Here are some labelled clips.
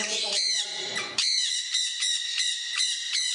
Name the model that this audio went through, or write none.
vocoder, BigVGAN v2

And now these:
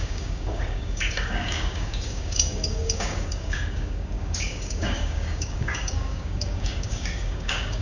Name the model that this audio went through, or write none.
codec, DAC